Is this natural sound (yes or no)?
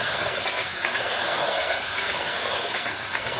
no